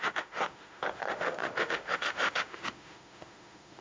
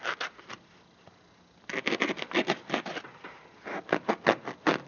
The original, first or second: second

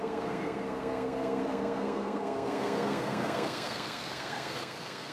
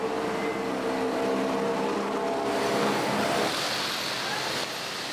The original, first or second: second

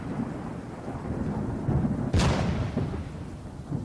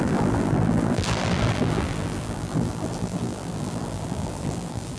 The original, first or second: first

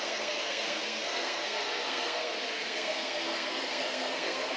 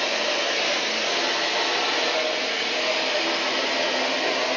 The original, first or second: second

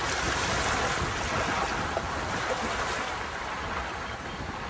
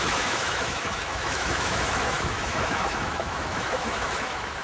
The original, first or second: first